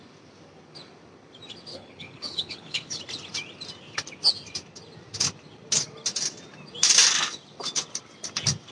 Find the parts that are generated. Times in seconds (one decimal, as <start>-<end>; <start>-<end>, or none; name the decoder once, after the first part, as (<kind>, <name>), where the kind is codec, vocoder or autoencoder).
1.7-3.0 (codec, HILCodec)